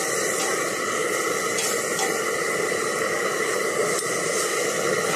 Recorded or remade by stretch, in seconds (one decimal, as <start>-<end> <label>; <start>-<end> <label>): 0.0-5.2 recorded